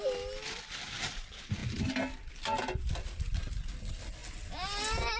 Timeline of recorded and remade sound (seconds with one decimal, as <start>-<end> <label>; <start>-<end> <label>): 0.0-5.2 recorded